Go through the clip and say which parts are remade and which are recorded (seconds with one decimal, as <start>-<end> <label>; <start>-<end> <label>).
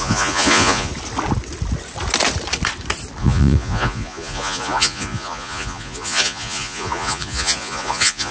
0.0-0.9 remade; 0.9-3.2 recorded; 3.2-8.3 remade